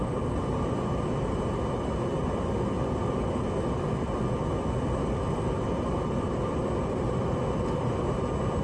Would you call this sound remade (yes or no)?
no